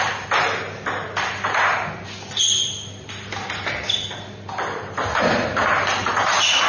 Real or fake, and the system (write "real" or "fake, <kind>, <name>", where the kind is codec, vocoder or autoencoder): real